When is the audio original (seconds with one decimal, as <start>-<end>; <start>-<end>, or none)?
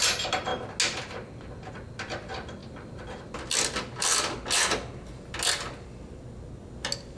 0.0-7.2